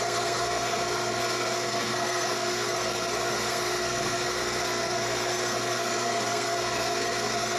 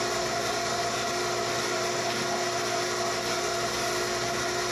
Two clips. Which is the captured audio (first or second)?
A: second